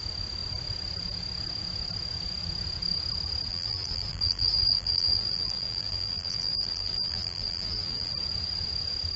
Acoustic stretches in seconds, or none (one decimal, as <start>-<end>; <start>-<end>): 0.0-3.5; 8.1-9.2